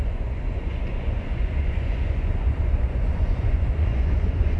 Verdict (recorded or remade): remade